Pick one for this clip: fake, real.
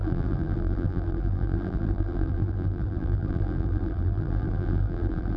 fake